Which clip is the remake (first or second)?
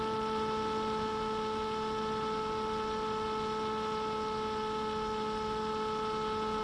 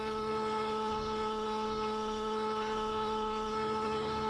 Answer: second